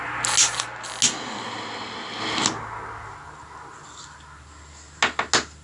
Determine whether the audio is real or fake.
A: real